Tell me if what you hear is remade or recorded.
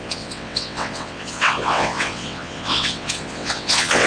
remade